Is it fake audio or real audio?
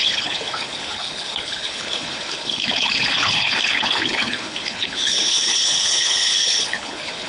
fake